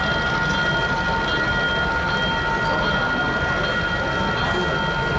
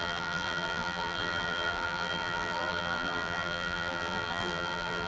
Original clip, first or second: first